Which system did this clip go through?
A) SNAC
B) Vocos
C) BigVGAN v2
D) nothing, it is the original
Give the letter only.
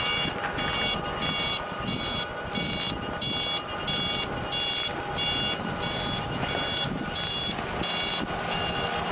D